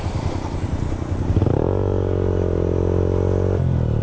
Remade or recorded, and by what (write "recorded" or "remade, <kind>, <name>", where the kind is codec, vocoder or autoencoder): recorded